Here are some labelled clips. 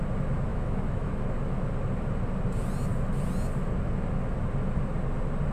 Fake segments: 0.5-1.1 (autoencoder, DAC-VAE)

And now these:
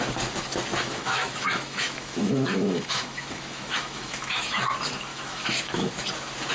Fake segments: 0.7-4.6 (autoencoder, DAC-VAE); 5.1-5.9

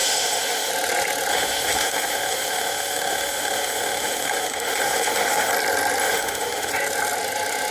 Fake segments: 0.0-0.7 (autoencoder, DAC-VAE); 1.3-5.5; 6.0-6.7

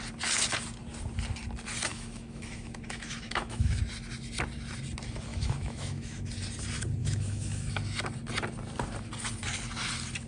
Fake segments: 1.9-3.8 (autoencoder, DAC-VAE); 5.3-6.3; 7.0-7.7

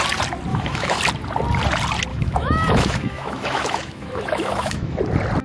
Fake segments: 0.5-1.0 (autoencoder, DAC-VAE); 2.1-5.0

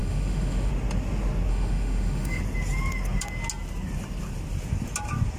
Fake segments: 0.0-0.7 (autoencoder, DAC-VAE); 1.5-2.4